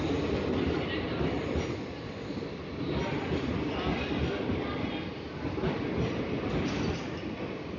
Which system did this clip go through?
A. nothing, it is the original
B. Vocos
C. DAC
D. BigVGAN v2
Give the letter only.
A